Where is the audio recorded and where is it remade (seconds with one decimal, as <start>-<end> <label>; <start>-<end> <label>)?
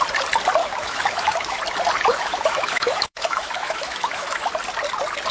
0.0-0.6 recorded; 0.6-1.6 remade; 1.6-2.1 recorded; 2.1-4.5 remade; 4.5-5.3 recorded